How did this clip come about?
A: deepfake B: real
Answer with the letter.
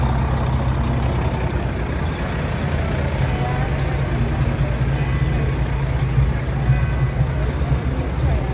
B